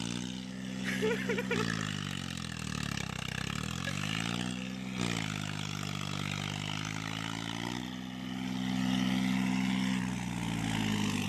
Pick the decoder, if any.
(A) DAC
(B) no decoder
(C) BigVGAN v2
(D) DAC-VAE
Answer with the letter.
B